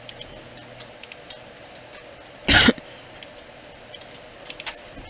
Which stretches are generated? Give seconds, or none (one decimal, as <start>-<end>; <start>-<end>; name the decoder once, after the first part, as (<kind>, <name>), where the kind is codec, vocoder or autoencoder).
none